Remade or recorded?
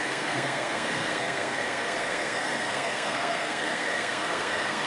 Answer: remade